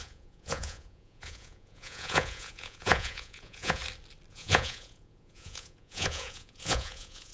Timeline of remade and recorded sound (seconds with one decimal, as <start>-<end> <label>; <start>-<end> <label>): 0.0-3.8 remade; 3.8-4.3 recorded; 4.3-7.3 remade

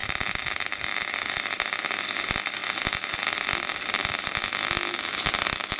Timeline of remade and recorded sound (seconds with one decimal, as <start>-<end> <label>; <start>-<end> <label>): 0.0-5.8 recorded

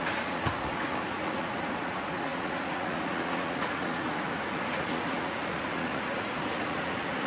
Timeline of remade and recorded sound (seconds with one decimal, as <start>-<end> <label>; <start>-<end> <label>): 0.0-7.3 remade

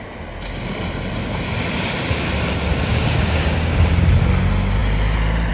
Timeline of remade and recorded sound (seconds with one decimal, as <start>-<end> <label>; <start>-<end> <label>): 0.0-2.9 recorded; 2.9-3.9 remade; 3.9-5.5 recorded

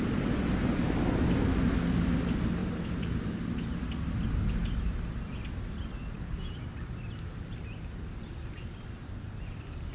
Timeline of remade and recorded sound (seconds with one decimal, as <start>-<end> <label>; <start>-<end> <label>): 0.0-2.6 recorded; 2.6-3.8 remade; 3.8-9.9 recorded

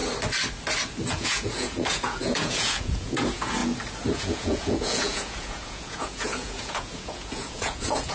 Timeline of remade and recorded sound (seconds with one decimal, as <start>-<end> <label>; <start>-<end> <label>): 0.0-1.1 recorded; 1.1-3.6 remade; 3.6-4.1 recorded; 4.1-8.1 remade

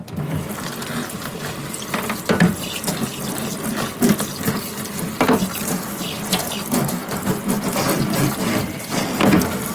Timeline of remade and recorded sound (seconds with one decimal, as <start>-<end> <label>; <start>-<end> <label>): 0.0-9.7 recorded

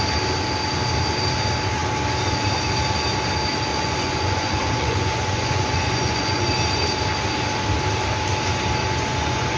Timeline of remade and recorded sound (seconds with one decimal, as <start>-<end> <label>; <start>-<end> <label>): 0.0-3.7 recorded; 3.7-6.4 remade; 6.4-8.8 recorded; 8.8-9.6 remade